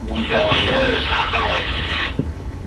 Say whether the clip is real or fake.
fake